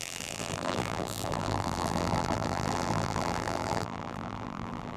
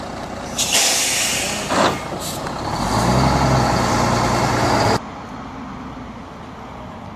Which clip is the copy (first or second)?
first